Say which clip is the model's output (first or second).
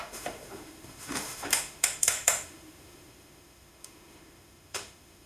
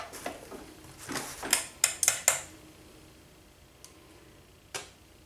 first